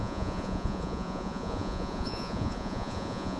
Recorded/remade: remade